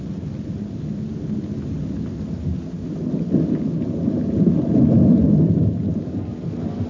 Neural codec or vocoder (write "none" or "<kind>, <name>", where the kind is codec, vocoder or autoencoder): none